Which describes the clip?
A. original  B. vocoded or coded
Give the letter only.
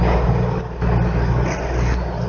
A